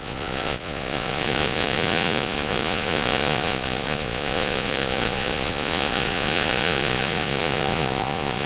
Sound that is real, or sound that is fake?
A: fake